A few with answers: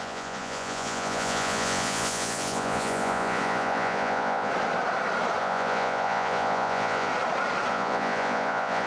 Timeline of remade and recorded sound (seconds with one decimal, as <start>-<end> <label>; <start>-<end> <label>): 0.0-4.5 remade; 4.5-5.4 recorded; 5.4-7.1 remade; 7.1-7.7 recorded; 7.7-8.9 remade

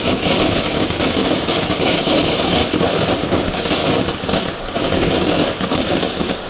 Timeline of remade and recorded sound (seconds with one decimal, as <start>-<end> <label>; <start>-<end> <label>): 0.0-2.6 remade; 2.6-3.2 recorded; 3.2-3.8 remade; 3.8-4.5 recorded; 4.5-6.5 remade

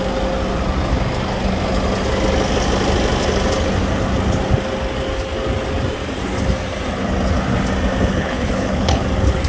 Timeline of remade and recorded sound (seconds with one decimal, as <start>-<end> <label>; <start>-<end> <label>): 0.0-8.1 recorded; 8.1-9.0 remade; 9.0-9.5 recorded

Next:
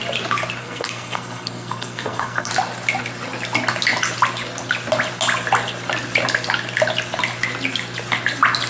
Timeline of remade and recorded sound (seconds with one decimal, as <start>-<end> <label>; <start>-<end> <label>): 0.0-0.6 recorded; 0.6-2.5 remade; 2.5-8.7 recorded

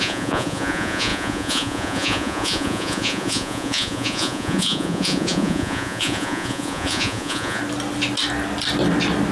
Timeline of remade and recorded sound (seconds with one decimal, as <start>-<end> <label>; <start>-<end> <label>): 0.0-7.6 remade; 7.6-9.3 recorded